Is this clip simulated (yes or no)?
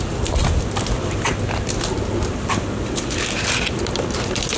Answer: no